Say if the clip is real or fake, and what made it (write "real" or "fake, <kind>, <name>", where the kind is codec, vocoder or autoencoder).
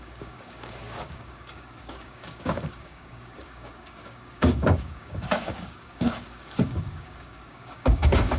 fake, codec, DAC